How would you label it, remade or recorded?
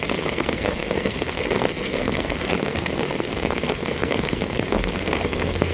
remade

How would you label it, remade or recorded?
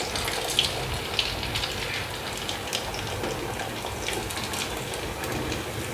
recorded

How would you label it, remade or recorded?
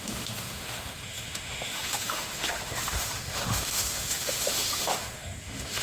remade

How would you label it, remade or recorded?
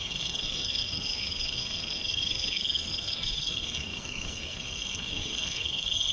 remade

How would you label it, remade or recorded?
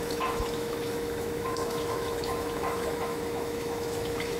remade